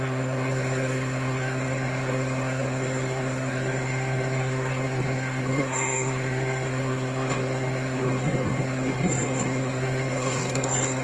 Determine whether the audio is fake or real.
fake